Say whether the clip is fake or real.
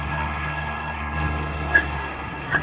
fake